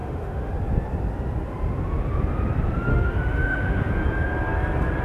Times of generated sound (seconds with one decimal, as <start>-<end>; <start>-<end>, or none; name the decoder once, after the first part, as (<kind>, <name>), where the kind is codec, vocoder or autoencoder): 0.0-0.5 (autoencoder, DAC-VAE); 2.9-3.9